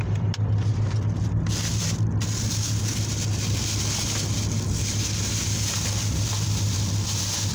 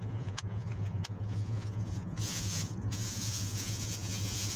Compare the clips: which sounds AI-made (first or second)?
second